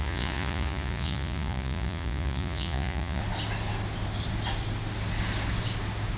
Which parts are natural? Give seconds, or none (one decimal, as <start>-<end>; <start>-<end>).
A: 3.2-6.2